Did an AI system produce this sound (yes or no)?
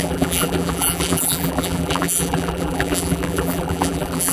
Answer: yes